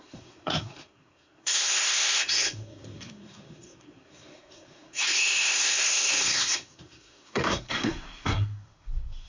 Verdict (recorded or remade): remade